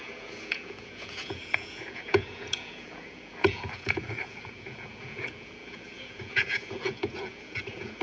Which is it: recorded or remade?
remade